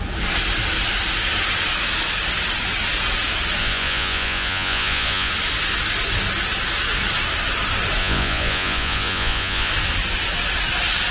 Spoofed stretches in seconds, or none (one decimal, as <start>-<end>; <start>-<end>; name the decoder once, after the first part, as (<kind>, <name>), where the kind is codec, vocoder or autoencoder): 3.6-5.3 (vocoder, Vocos); 8.0-9.7